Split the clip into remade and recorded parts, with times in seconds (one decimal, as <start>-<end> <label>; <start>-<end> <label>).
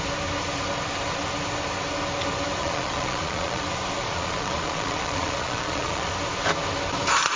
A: 0.0-2.6 recorded; 2.6-3.6 remade; 3.6-4.1 recorded; 4.1-6.1 remade; 6.1-7.4 recorded